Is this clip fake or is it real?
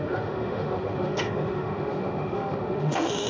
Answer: fake